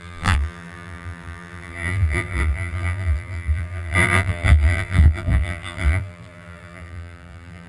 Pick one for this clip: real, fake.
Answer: fake